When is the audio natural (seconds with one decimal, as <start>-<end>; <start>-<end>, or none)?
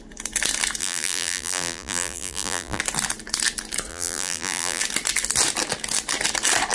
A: 0.0-0.8; 2.8-3.9; 4.8-6.7